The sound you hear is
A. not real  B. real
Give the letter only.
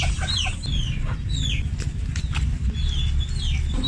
B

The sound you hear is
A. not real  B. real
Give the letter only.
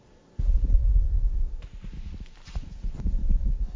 B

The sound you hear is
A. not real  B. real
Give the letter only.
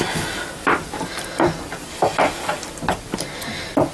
B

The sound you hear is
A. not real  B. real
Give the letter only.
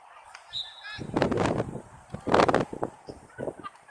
B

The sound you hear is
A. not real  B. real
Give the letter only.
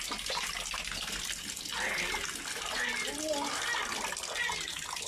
B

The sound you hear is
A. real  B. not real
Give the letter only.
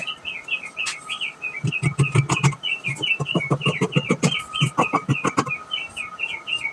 A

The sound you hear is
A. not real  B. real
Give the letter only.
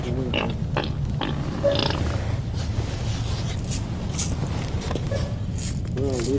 B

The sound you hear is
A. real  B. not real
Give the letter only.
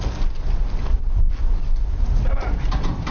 A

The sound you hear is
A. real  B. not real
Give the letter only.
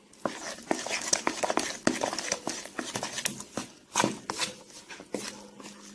A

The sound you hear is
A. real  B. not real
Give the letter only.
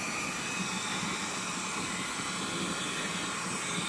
A